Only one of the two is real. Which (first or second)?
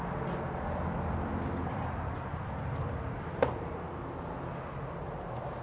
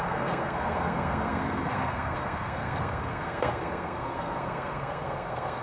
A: first